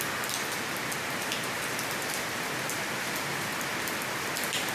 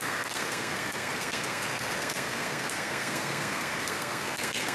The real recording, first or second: first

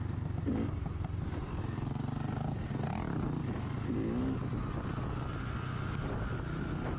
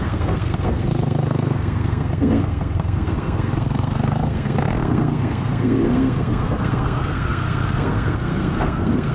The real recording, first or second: first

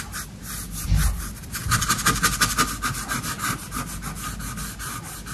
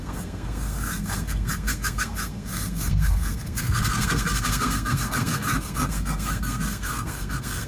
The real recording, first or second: first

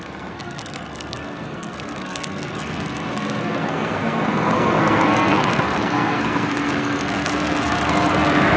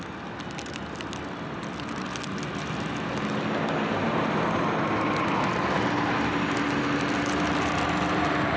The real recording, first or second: second